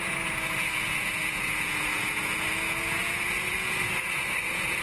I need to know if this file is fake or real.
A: fake